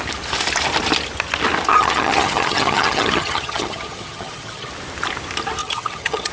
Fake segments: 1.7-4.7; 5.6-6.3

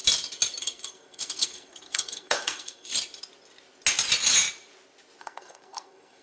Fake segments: 0.6-2.9; 5.2-6.2

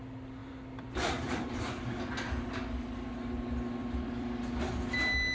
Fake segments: 0.4-2.1; 3.8-4.7